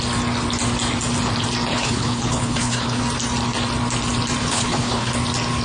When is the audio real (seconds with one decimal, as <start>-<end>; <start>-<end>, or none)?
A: 0.0-1.7; 3.0-4.4; 5.1-5.6